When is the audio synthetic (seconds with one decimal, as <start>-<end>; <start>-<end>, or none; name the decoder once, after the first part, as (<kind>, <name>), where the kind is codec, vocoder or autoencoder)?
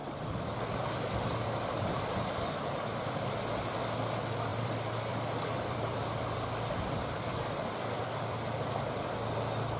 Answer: 0.0-3.8 (vocoder, BigVGAN v2); 4.5-9.1